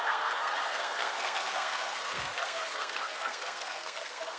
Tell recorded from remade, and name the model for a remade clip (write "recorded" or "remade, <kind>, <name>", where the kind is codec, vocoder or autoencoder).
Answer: remade, codec, SNAC